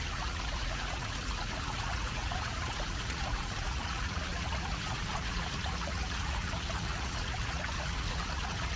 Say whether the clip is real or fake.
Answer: fake